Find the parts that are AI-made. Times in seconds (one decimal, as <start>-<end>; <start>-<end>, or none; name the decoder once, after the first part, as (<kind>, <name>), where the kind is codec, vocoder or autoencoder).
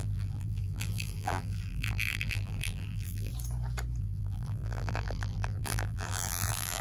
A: 0.0-3.3 (vocoder, BigVGAN v2); 4.0-6.8